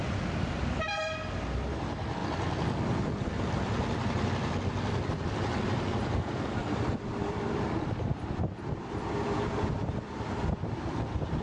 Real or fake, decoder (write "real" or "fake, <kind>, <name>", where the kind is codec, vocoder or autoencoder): fake, vocoder, BigVGAN v2